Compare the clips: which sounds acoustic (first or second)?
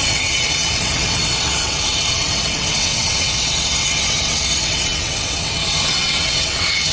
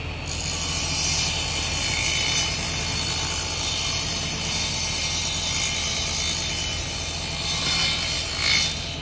second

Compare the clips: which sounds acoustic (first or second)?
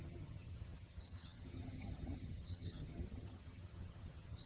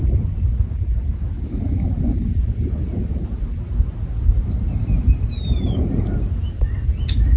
second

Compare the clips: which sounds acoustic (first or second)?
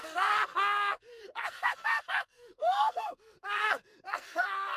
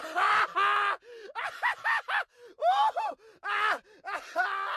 second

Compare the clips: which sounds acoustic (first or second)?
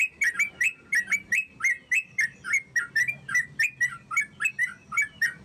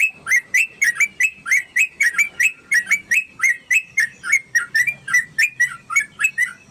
first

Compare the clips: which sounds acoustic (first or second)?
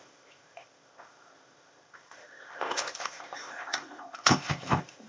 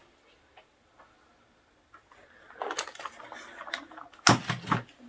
second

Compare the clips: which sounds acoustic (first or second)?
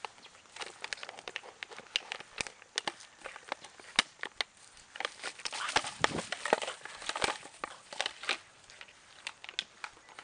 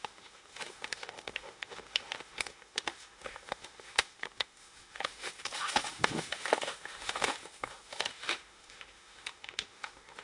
first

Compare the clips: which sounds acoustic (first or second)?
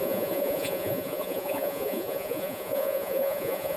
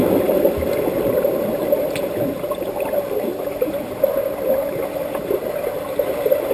second